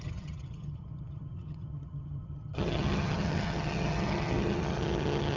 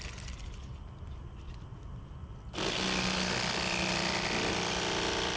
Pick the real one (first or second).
second